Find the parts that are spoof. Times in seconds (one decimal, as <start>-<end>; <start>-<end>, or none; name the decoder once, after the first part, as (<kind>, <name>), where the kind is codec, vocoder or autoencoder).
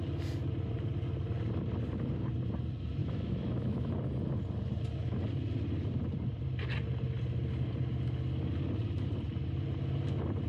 3.0-3.9 (autoencoder, DAC-VAE)